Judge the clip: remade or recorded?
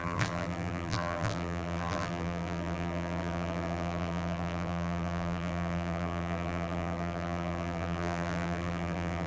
remade